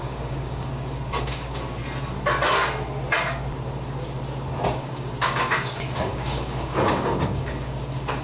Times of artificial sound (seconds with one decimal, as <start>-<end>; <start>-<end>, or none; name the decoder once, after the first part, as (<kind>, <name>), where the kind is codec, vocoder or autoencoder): 0.0-1.8 (codec, DAC); 4.6-8.2